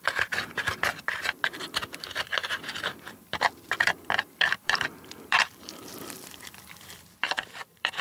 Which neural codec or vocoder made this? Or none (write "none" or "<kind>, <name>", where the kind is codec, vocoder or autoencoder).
vocoder, BigVGAN v2